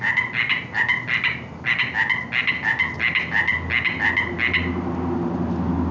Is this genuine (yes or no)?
yes